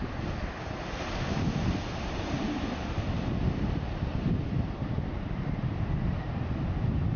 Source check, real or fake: real